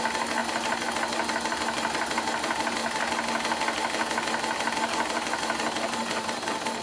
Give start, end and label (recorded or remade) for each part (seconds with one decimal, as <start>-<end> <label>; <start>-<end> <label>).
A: 0.0-6.8 recorded